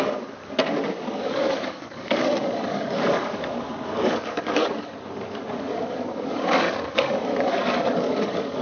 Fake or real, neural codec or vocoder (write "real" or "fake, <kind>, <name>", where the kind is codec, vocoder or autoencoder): fake, codec, DAC